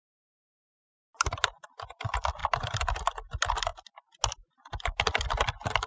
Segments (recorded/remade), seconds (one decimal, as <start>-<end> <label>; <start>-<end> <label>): 0.0-5.9 recorded